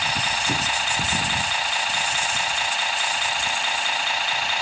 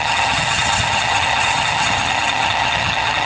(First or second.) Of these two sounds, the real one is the first